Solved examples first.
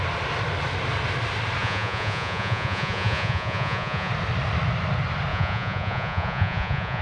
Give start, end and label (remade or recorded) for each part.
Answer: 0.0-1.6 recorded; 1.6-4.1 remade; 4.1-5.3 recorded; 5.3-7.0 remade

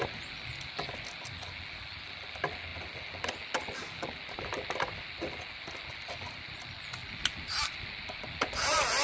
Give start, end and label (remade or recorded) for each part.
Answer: 0.0-9.0 recorded

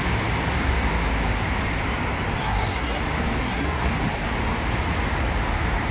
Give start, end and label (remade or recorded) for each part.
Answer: 0.0-2.4 recorded; 2.4-3.0 remade; 3.0-3.4 recorded; 3.4-3.9 remade; 3.9-5.9 recorded

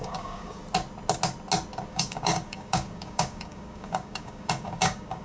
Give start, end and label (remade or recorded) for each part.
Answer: 0.0-0.6 remade; 0.6-1.9 recorded; 1.9-5.2 remade